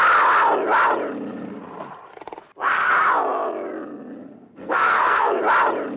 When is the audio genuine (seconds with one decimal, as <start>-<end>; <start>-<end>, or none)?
0.0-4.5; 5.4-6.0